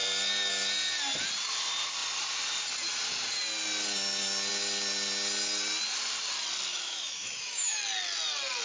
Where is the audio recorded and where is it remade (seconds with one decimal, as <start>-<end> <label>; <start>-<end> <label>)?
0.0-6.7 recorded; 6.7-7.8 remade; 7.8-8.6 recorded